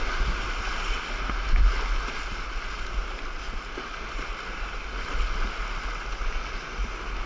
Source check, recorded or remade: recorded